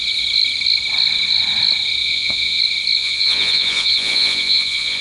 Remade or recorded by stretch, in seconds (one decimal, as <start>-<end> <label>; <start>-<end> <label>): 0.0-2.0 recorded; 2.0-2.6 remade; 2.6-3.0 recorded; 3.0-5.0 remade